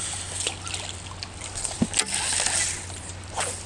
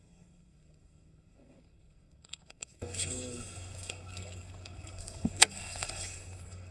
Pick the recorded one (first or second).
first